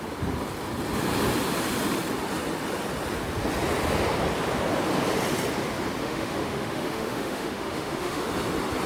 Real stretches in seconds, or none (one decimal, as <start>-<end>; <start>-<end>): 0.0-6.0; 8.3-8.9